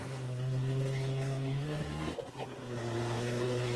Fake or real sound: fake